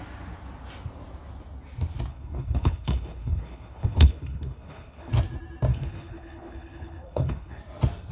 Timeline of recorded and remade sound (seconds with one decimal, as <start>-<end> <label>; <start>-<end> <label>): 0.0-2.1 recorded; 2.1-5.1 remade; 5.1-5.7 recorded; 5.7-7.6 remade; 7.6-8.1 recorded